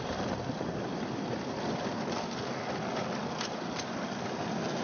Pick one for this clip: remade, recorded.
recorded